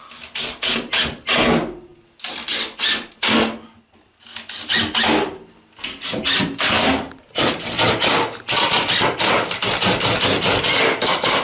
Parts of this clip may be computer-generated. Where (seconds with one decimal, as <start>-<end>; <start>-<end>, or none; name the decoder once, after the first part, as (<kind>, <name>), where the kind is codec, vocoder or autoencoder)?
none